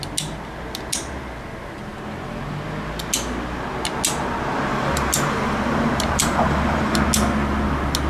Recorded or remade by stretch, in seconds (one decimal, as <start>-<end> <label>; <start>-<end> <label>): 0.0-4.7 recorded; 4.7-7.0 remade; 7.0-8.1 recorded